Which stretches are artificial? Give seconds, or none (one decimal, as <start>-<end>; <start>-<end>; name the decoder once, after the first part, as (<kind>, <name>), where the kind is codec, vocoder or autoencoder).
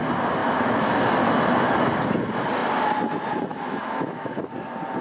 0.4-1.0 (autoencoder, DAC-VAE); 3.5-4.4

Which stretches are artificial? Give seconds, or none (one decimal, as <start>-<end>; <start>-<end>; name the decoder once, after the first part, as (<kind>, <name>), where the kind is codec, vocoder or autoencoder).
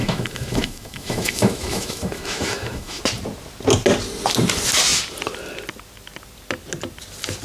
0.0-3.0 (autoencoder, DAC-VAE)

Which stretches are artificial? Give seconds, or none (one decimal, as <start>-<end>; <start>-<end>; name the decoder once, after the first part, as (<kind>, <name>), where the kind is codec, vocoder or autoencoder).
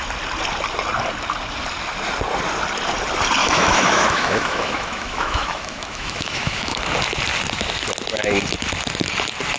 3.4-6.8 (autoencoder, DAC-VAE)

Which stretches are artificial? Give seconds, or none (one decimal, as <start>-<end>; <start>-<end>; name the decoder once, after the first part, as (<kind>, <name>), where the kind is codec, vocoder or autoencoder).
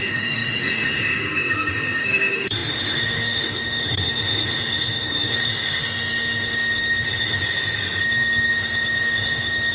0.0-7.4 (autoencoder, DAC-VAE); 8.0-9.7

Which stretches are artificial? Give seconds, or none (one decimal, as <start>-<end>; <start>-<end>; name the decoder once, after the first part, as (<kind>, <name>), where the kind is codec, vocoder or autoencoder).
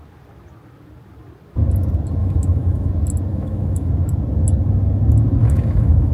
2.2-2.9 (autoencoder, DAC-VAE); 3.3-3.9; 5.4-6.1